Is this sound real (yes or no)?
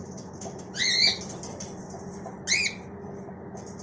yes